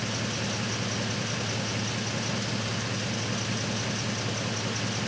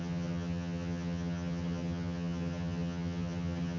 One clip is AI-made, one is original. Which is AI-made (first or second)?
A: second